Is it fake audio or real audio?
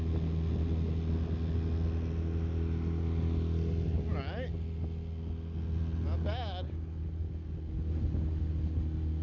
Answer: real